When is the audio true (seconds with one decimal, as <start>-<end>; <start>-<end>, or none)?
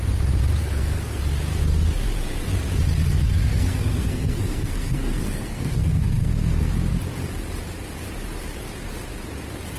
0.0-0.6; 1.2-3.5; 6.7-9.8